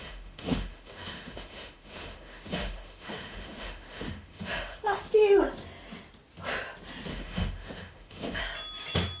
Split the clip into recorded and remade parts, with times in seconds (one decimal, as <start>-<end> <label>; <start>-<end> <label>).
0.0-5.0 remade; 5.0-7.1 recorded; 7.1-8.4 remade; 8.4-9.2 recorded